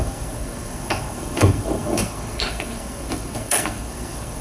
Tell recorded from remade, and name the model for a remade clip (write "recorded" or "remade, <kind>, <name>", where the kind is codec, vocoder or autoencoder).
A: remade, codec, SNAC